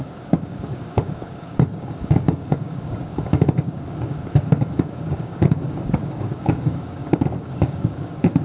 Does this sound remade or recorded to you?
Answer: remade